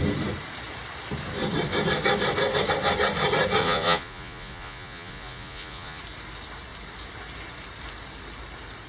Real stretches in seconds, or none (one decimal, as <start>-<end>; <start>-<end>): 0.0-3.6; 6.0-8.9